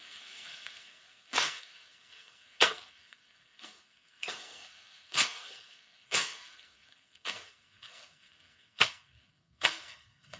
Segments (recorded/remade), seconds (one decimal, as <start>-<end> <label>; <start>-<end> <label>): 0.0-10.4 remade